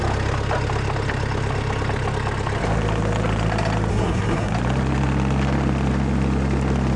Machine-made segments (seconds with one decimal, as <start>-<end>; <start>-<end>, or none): 3.9-4.5

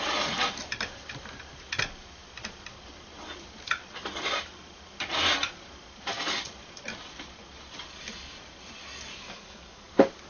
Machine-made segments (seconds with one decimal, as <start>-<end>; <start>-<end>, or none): 9.1-10.3